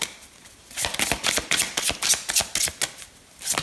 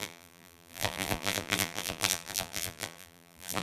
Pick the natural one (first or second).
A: first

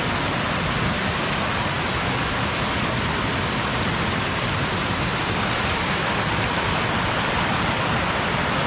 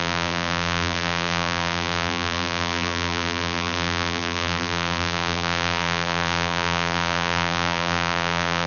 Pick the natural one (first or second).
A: first